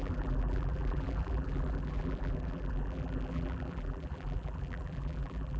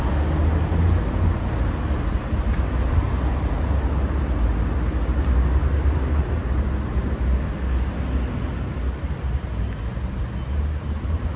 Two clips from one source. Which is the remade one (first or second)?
first